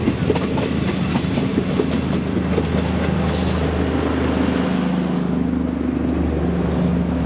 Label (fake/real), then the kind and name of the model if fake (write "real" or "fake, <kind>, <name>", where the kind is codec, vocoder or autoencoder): real